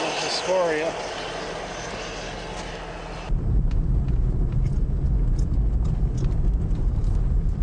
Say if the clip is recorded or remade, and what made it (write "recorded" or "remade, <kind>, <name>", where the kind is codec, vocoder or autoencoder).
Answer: recorded